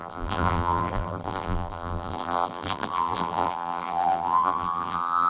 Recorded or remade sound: remade